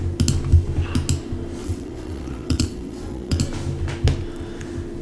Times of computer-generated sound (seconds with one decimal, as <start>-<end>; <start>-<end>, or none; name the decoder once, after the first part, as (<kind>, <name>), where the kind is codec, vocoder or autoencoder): 1.6-3.4 (vocoder, WaveNeXt)